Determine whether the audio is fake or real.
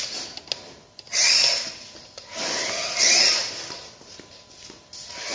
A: real